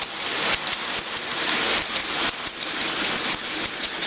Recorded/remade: recorded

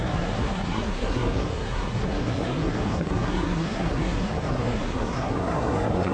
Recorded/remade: remade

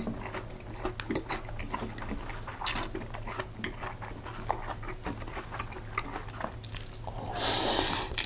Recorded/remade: recorded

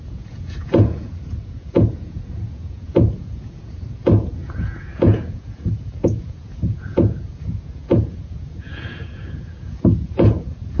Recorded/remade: remade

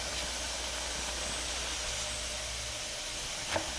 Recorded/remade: recorded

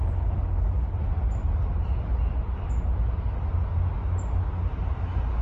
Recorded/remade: recorded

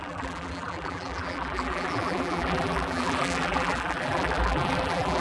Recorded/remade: remade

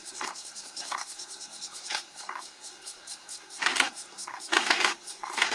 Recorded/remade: remade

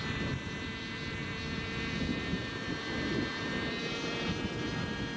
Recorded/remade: recorded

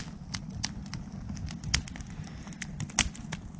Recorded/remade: recorded